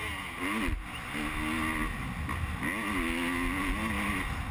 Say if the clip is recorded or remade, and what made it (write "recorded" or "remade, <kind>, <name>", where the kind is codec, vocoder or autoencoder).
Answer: recorded